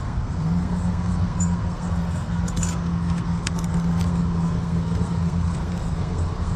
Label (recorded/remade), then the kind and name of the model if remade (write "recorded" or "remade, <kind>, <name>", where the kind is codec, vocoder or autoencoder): remade, codec, SNAC